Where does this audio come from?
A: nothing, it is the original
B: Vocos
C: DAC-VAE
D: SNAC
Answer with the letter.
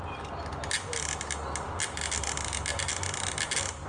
A